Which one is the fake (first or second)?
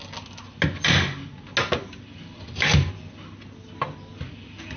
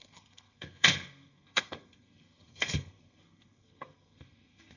second